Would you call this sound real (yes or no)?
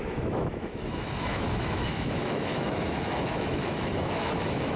no